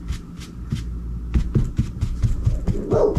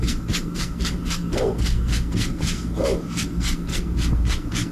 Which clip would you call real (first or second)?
first